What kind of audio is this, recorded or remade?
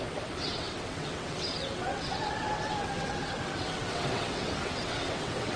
remade